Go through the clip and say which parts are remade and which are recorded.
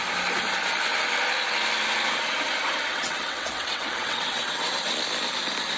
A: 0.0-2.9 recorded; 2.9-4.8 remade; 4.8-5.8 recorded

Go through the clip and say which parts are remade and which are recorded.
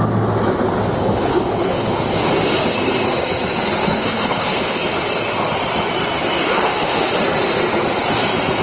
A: 0.0-1.0 recorded; 1.0-1.9 remade; 1.9-3.8 recorded; 3.8-4.8 remade; 4.8-6.4 recorded; 6.4-7.1 remade; 7.1-8.6 recorded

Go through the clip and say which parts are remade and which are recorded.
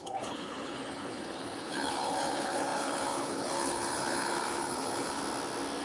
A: 0.0-5.2 remade; 5.2-5.8 recorded